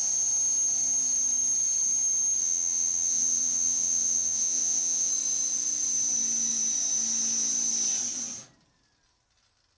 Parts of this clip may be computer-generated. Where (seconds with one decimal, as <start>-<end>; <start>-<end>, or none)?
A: 2.4-5.1